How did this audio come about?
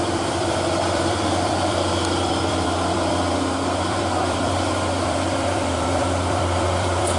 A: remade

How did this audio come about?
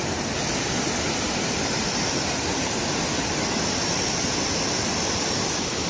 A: recorded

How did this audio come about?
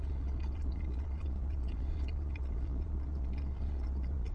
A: remade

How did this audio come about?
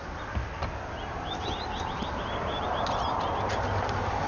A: recorded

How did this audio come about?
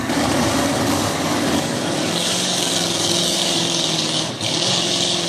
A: remade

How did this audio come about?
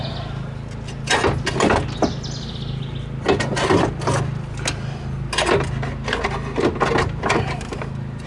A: recorded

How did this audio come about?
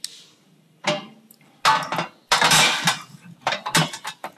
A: recorded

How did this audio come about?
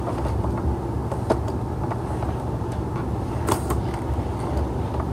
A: recorded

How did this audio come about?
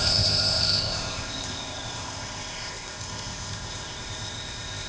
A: remade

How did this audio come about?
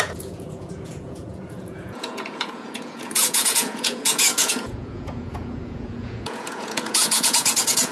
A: remade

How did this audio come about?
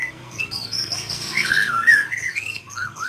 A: remade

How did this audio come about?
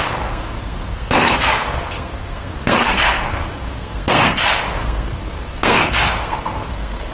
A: remade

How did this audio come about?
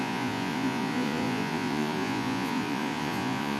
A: remade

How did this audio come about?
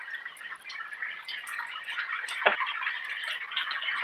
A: recorded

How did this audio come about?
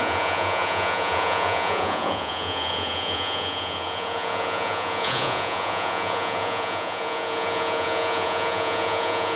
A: remade